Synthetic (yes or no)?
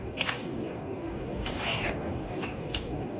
yes